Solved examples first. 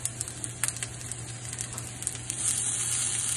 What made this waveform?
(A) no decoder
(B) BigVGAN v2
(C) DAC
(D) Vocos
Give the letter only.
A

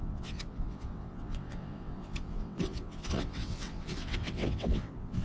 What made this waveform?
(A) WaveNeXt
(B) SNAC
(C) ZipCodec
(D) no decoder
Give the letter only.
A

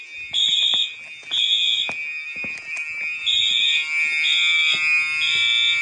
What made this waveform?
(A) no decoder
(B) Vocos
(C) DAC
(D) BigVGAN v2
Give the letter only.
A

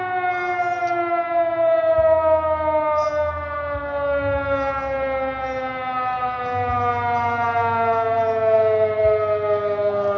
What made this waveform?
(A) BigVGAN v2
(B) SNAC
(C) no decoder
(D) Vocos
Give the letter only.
C